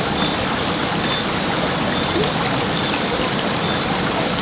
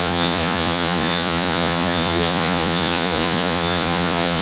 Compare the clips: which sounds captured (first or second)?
first